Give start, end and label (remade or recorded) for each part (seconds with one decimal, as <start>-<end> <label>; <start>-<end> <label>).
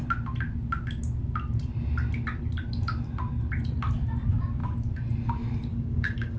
0.0-5.7 recorded; 5.7-6.4 remade